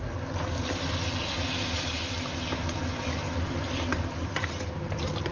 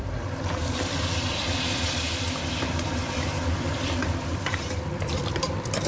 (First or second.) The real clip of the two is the first